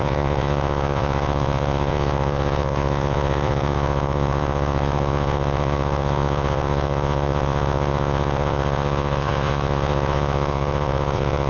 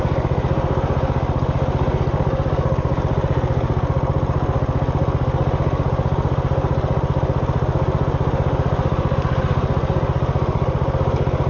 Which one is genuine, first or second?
second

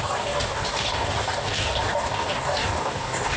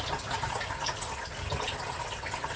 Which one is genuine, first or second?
second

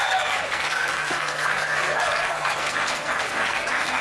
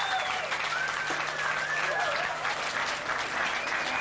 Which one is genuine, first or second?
second